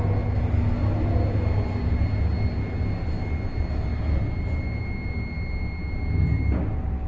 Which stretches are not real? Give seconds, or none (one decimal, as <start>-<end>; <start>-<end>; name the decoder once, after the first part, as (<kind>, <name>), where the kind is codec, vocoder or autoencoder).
none